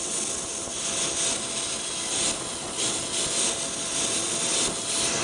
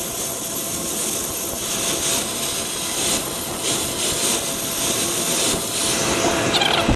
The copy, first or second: second